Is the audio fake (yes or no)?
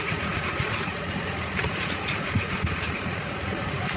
yes